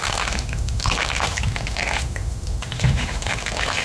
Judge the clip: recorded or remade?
remade